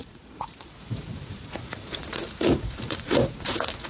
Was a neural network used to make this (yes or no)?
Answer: yes